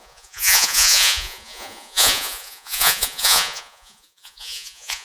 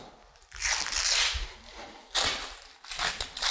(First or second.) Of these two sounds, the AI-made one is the first